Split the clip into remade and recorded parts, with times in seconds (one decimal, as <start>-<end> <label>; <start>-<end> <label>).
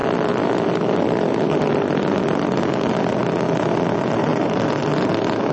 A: 0.0-5.5 recorded